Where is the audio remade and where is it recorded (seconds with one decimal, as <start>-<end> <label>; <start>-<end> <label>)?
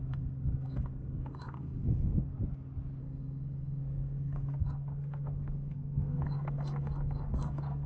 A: 0.0-2.3 remade; 2.3-3.0 recorded; 3.0-7.9 remade